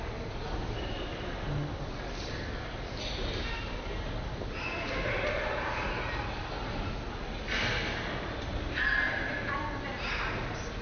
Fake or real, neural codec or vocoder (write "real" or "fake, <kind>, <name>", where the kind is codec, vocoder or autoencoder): real